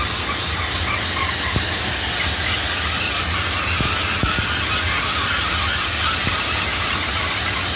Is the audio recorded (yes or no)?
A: yes